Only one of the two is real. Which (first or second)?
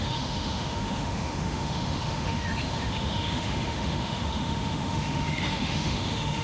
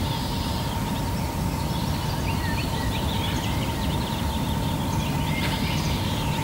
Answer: second